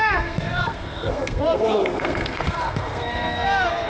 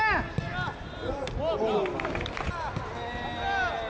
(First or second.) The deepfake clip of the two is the first